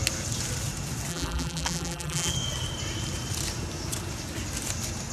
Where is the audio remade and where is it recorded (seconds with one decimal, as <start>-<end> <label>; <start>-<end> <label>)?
0.0-1.1 recorded; 1.1-2.3 remade; 2.3-5.1 recorded